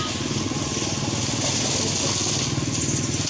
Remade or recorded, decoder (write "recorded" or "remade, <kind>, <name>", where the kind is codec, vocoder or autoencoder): recorded